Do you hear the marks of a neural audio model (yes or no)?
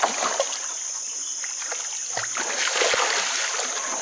no